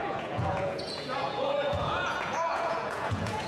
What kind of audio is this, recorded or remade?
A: remade